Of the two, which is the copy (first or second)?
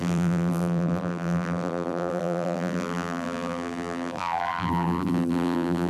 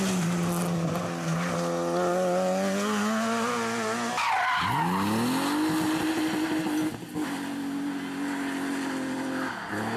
first